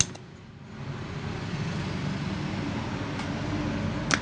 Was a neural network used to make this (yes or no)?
no